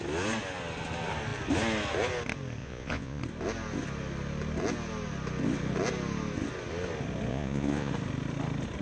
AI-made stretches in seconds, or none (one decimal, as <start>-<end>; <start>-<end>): 2.6-3.2; 7.3-7.9